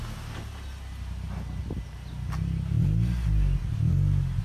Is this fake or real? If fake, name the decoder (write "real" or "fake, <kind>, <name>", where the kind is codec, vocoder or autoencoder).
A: real